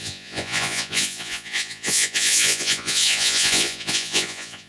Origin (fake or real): fake